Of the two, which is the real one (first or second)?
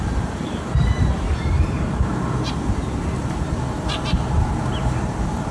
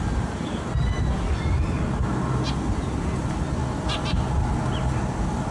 second